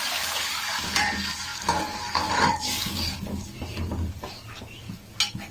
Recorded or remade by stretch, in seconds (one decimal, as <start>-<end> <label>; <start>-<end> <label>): 0.0-5.5 remade